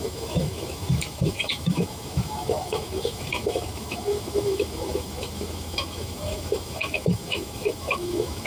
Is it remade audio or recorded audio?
remade